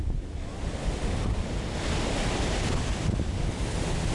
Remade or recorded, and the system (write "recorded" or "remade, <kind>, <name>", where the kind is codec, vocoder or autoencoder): recorded